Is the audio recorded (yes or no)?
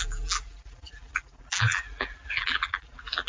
no